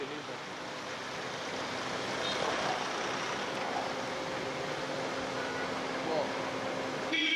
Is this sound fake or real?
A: real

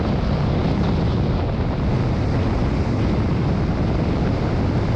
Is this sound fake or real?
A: real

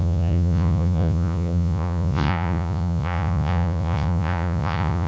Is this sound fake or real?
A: fake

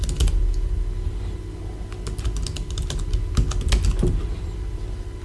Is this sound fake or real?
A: real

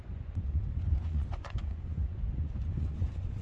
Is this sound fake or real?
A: fake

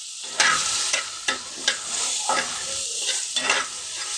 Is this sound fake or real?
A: real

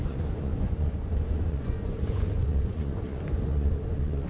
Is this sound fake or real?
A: fake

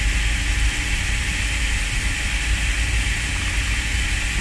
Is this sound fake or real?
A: real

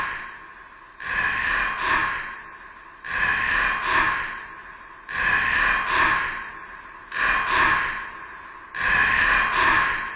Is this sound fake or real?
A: real